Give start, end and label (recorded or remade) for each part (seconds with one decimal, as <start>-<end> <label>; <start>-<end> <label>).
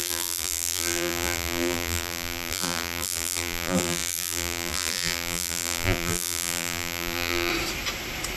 0.0-7.5 remade; 7.5-8.4 recorded